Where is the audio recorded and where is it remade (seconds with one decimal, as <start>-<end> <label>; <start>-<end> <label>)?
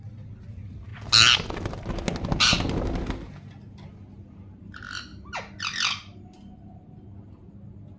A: 0.0-8.0 recorded